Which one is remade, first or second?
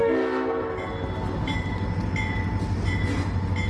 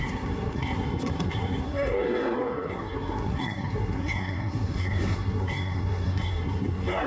second